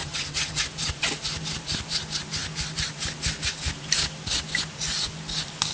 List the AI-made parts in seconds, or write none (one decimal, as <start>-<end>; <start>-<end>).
0.0-0.6